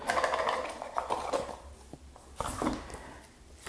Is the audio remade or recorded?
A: recorded